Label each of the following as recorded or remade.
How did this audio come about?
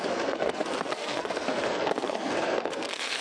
remade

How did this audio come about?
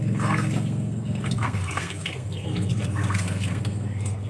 remade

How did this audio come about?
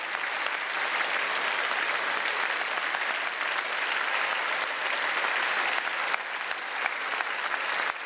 recorded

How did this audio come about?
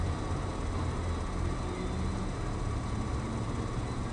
recorded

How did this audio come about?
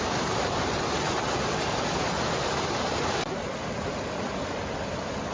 recorded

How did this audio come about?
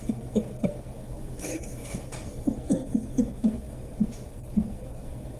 remade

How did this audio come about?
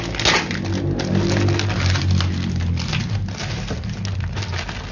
recorded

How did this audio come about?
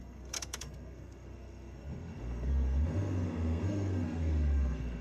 remade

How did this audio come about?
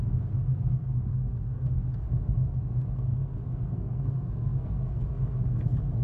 remade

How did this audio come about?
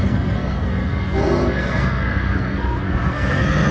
remade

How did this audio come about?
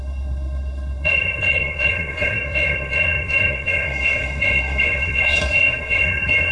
remade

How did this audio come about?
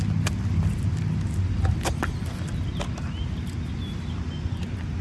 recorded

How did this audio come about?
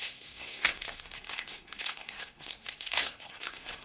remade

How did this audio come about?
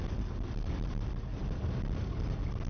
recorded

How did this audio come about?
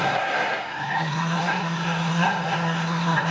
remade